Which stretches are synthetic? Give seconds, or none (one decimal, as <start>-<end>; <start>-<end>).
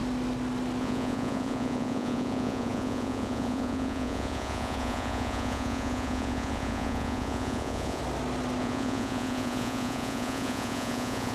0.8-8.0; 8.6-11.3